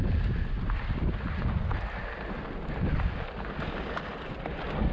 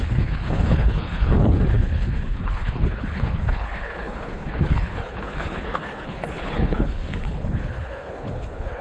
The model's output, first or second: second